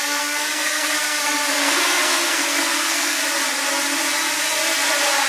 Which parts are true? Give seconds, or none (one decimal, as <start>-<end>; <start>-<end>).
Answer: 3.2-5.3